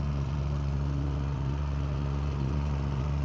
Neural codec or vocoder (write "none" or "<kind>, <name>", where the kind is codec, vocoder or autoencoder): vocoder, Vocos